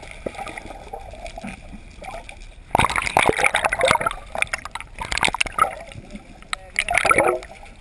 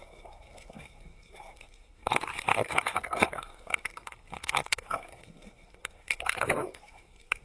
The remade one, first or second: second